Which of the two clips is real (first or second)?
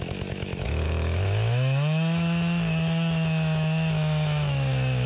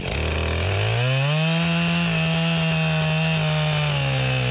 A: second